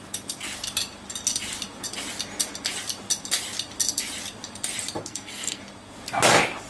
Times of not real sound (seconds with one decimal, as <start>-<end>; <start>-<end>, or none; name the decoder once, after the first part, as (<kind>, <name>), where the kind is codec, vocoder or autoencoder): 5.0-5.6 (codec, SNAC)